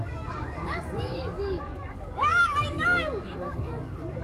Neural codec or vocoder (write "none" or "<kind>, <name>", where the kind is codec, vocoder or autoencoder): codec, DAC